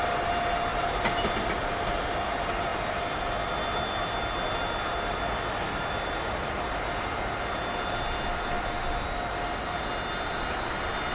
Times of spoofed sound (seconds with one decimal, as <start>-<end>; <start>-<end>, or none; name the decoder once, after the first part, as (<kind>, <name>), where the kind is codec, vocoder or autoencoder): none

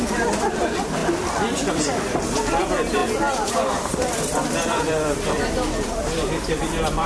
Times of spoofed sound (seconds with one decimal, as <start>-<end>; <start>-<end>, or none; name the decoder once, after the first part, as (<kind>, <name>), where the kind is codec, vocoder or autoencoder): 0.0-1.0 (vocoder, BigVGAN v2); 1.7-3.0; 3.5-7.1

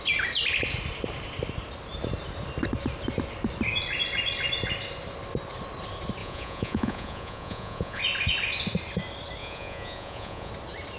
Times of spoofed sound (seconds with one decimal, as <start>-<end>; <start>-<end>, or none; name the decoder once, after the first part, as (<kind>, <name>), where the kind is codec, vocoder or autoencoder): 6.2-8.0 (vocoder, Vocos); 9.4-10.5

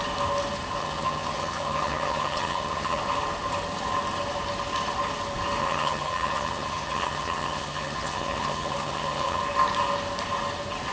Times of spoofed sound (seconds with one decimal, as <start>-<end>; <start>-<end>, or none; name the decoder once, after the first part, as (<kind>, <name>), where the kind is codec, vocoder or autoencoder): 0.8-3.0 (vocoder, HiFi-GAN); 5.6-9.4

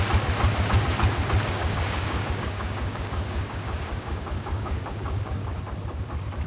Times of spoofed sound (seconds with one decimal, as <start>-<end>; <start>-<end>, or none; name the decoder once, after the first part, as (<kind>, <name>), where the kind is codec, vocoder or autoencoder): 1.6-5.5 (codec, DAC)

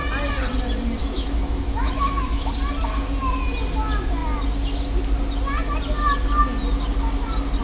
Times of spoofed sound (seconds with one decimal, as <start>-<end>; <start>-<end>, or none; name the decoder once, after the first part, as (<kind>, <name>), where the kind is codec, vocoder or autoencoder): 1.0-2.5 (autoencoder, DAC-VAE)

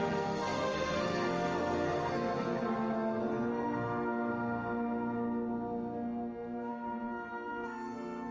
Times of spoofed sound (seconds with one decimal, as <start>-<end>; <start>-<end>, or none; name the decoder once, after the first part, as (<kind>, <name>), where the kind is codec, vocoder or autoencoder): 0.0-4.3 (codec, SNAC); 6.7-8.3